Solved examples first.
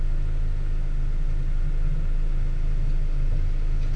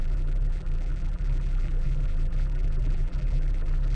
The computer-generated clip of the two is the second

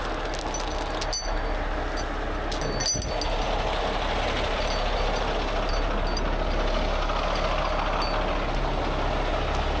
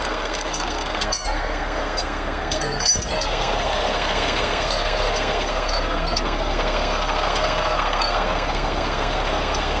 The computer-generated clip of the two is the second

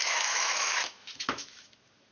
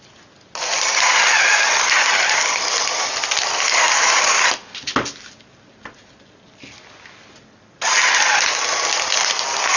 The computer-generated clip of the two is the first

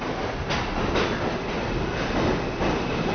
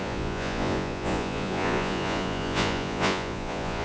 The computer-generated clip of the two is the second